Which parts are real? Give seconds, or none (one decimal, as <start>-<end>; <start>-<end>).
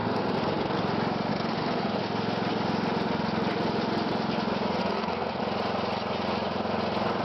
0.8-1.3; 2.0-4.8; 5.4-7.2